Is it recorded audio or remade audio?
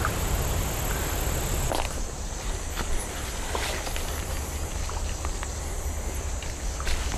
recorded